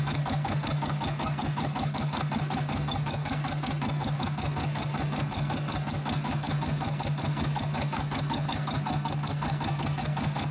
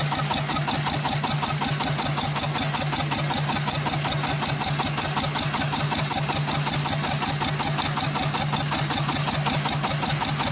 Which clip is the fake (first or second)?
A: first